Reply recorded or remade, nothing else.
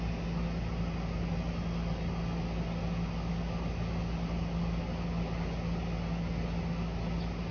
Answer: recorded